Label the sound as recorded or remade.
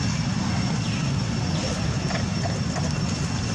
recorded